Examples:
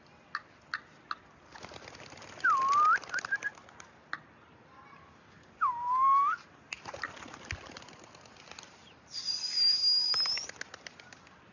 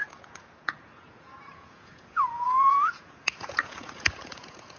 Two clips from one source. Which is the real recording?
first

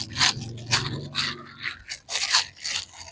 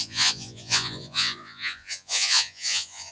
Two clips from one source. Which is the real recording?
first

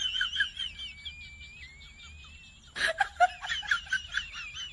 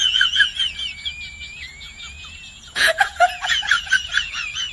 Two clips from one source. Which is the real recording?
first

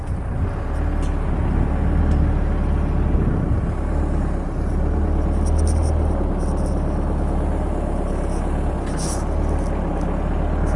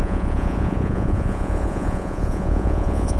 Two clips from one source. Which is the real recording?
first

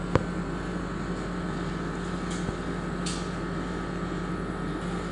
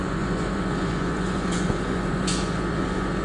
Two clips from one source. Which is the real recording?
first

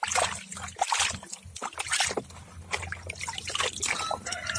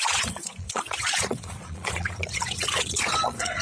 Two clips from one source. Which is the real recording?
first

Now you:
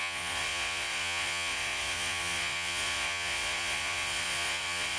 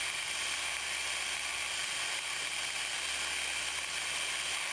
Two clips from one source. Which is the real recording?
second